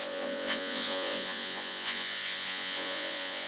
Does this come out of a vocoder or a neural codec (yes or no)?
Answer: yes